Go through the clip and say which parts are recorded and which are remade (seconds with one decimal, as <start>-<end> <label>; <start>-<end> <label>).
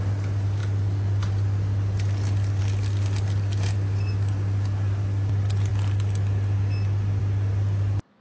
0.0-8.2 recorded